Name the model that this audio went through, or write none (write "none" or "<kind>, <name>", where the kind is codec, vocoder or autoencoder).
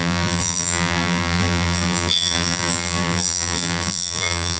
vocoder, BigVGAN v2